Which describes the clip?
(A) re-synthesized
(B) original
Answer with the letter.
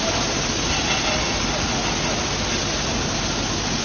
B